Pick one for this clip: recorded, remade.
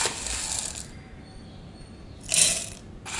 recorded